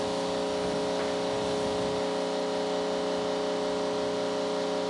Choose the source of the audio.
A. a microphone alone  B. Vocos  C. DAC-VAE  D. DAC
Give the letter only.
A